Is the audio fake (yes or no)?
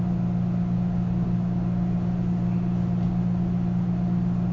no